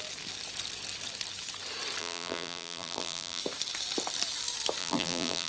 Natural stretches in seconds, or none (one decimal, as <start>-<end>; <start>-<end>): 0.0-2.0; 3.4-4.8